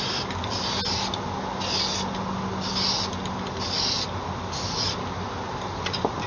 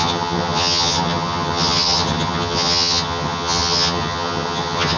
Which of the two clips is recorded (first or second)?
first